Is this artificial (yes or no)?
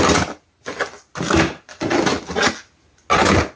no